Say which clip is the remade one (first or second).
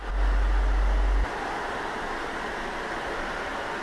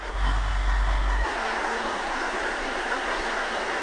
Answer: second